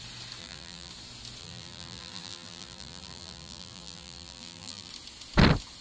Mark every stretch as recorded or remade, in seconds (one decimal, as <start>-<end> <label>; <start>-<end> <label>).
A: 0.0-0.4 recorded; 0.4-0.9 remade; 0.9-1.4 recorded; 1.4-4.9 remade; 4.9-5.8 recorded

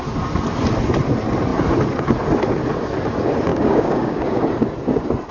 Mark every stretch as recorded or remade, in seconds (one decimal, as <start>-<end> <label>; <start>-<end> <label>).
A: 0.0-3.5 recorded; 3.5-4.4 remade; 4.4-5.3 recorded

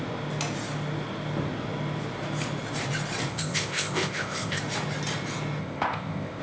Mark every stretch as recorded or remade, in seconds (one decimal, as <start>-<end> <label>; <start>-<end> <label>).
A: 0.0-3.3 recorded; 3.3-4.6 remade; 4.6-5.6 recorded; 5.6-6.4 remade